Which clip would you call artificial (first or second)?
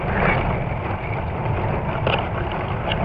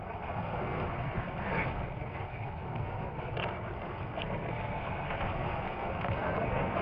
second